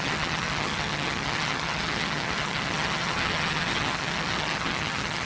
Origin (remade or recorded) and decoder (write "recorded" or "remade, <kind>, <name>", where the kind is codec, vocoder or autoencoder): remade, vocoder, HiFi-GAN